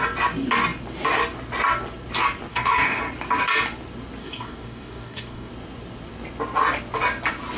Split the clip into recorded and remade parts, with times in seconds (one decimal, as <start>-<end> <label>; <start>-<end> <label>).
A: 0.0-2.5 recorded; 2.5-3.0 remade; 3.0-4.2 recorded; 4.2-5.5 remade; 5.5-7.6 recorded